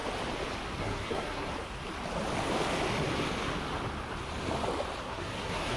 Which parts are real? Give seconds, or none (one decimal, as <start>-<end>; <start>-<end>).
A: 0.0-0.8; 1.5-5.0